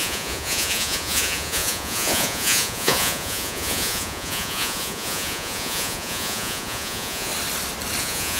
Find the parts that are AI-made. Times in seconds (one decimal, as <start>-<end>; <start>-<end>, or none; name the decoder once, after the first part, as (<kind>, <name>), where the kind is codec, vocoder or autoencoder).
0.0-7.3 (vocoder, Vocos); 8.0-8.4